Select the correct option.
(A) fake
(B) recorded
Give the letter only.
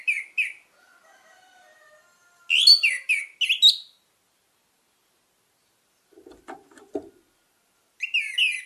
B